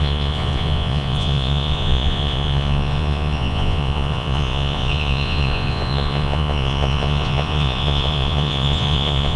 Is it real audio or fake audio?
fake